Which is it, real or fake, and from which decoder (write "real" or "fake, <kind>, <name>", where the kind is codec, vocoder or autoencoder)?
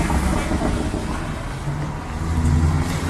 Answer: real